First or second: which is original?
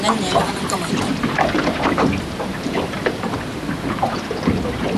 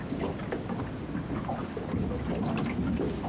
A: second